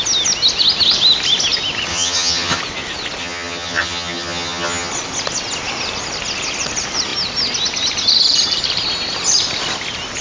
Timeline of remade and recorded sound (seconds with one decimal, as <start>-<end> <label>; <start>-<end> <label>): 0.0-1.9 recorded; 1.9-2.6 remade; 2.6-3.2 recorded; 3.2-4.9 remade; 4.9-10.2 recorded